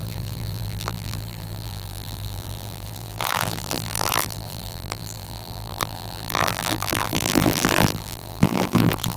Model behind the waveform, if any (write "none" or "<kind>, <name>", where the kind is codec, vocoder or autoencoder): vocoder, BigVGAN v2